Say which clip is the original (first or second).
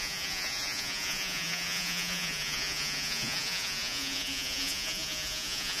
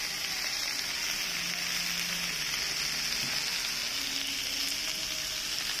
second